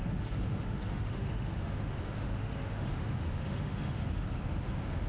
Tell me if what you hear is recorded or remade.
remade